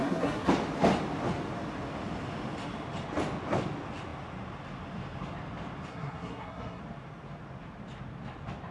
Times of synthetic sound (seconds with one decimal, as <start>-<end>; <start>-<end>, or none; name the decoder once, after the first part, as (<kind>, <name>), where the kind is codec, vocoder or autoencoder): 0.0-0.5 (codec, SNAC); 5.9-6.8